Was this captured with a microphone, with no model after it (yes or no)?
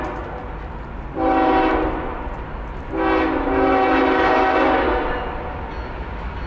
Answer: yes